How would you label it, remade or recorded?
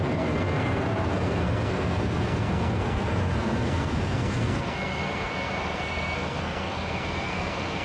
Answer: remade